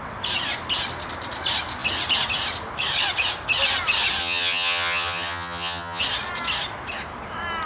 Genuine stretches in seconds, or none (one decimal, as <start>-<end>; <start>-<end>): 0.0-4.2; 6.0-7.7